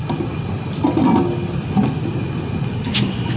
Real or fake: real